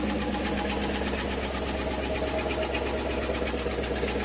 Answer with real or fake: real